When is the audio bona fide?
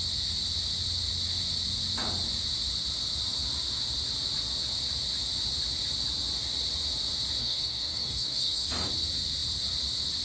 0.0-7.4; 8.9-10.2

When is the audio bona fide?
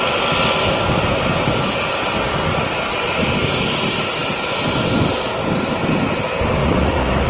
0.0-2.5; 3.3-6.6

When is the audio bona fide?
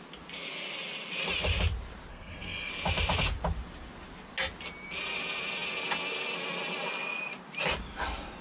0.0-2.1; 2.7-8.4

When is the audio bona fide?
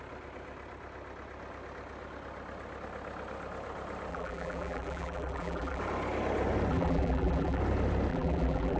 0.0-4.1; 5.8-6.7; 7.6-8.1